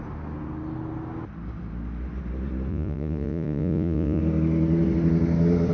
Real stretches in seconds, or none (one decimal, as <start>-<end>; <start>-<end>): 0.0-2.7; 4.2-5.7